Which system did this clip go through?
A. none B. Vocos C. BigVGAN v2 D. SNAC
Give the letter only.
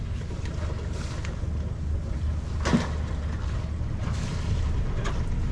A